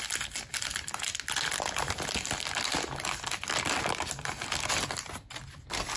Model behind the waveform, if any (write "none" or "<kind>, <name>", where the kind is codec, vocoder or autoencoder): none